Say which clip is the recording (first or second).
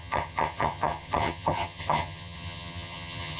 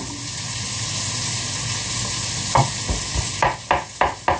second